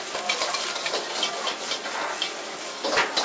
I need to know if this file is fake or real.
real